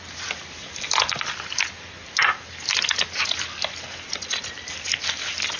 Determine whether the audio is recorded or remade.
recorded